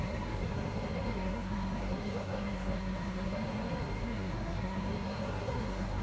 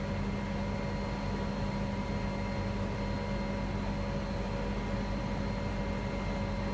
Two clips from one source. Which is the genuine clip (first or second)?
second